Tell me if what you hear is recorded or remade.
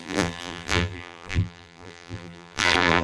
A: remade